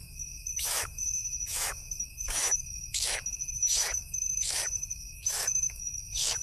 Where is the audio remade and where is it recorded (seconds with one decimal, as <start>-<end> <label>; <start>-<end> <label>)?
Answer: 0.0-6.4 remade